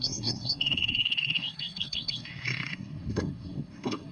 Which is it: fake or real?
fake